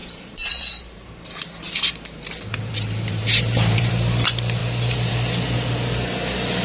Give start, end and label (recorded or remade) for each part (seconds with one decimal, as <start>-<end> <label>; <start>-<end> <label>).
0.0-3.9 remade; 3.9-6.6 recorded